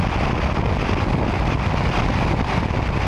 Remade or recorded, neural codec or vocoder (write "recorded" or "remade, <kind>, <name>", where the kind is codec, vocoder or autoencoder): recorded